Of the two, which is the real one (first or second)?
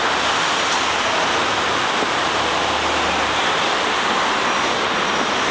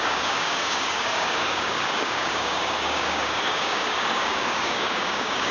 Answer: first